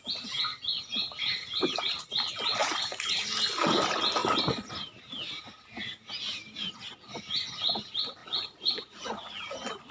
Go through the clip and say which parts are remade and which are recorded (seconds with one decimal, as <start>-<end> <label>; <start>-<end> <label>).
0.0-2.6 recorded; 2.6-3.2 remade; 3.2-8.2 recorded; 8.2-9.5 remade; 9.5-9.9 recorded